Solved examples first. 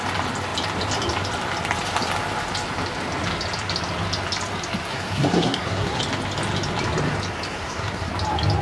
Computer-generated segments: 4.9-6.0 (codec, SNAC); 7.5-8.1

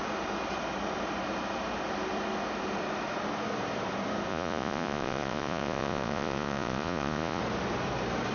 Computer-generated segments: 4.3-7.4 (vocoder, Vocos)

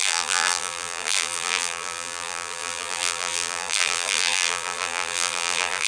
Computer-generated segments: 0.0-5.9 (vocoder, BigVGAN v2)

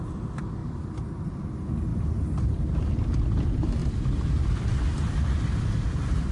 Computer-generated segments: 0.6-1.4 (vocoder, BigVGAN v2); 3.8-6.3

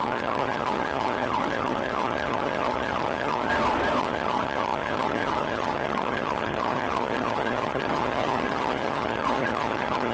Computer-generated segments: 0.0-3.5 (vocoder, HiFi-GAN); 4.0-10.1

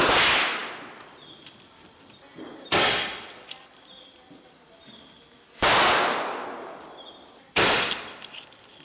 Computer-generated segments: none